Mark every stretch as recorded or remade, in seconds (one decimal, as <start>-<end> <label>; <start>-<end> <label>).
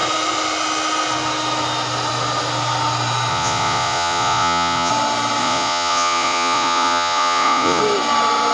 0.0-3.3 recorded; 3.3-4.9 remade; 4.9-5.4 recorded; 5.4-7.8 remade; 7.8-8.5 recorded